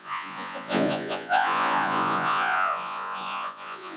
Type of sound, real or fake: fake